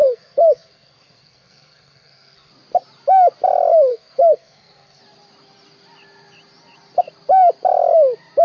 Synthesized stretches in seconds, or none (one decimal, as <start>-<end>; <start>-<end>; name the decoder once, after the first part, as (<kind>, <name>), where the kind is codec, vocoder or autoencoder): 0.0-2.5 (codec, SNAC); 3.9-5.0